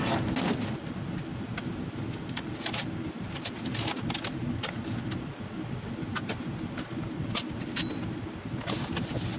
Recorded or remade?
recorded